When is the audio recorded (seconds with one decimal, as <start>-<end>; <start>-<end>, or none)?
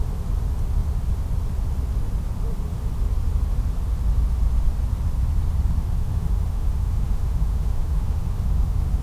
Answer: 0.0-6.0